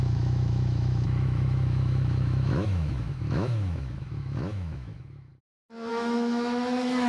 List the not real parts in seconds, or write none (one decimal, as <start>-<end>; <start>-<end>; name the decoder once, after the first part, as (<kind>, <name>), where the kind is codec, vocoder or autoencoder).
0.0-5.3 (autoencoder, DAC-VAE); 5.9-7.1